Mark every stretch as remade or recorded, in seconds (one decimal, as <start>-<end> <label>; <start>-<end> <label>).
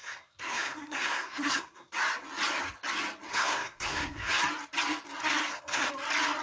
0.0-1.9 remade; 1.9-3.3 recorded; 3.3-4.4 remade; 4.4-5.2 recorded; 5.2-5.9 remade; 5.9-6.4 recorded